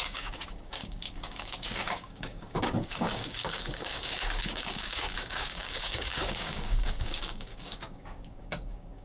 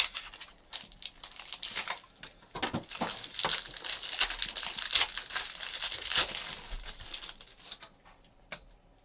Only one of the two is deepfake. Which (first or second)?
first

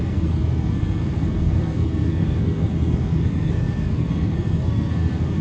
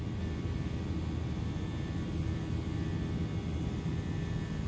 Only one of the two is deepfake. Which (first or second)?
first